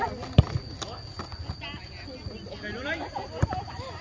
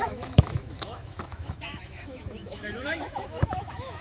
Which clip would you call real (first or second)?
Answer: first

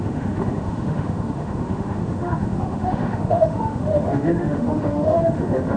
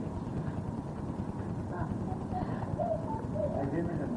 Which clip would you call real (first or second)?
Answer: second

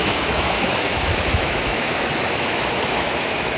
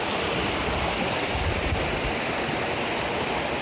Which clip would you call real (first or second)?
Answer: second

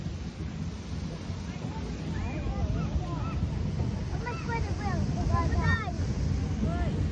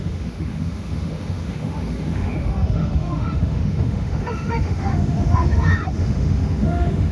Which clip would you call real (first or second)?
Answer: first